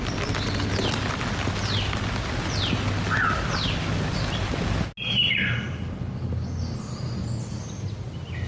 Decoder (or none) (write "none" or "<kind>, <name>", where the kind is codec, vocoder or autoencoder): none